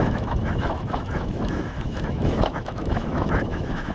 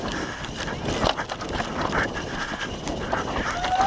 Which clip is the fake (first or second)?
first